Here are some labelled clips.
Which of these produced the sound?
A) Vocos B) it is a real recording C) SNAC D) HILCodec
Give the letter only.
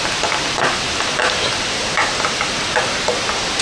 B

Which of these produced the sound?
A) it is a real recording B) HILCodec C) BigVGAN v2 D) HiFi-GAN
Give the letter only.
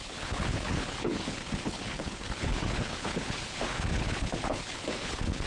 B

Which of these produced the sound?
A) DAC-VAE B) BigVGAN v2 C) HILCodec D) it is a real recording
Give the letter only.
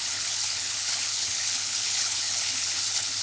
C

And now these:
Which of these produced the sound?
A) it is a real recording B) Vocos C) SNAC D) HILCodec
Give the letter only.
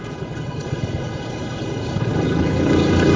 D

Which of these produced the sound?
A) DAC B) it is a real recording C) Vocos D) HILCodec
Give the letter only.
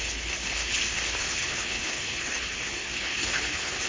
D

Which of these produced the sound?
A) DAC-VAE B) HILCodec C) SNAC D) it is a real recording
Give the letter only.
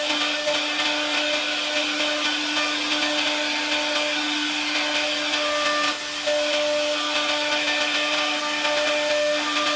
D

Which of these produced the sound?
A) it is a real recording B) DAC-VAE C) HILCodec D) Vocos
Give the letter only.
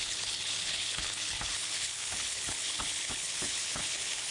C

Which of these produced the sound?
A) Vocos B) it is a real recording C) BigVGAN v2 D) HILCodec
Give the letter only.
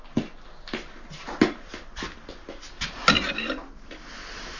B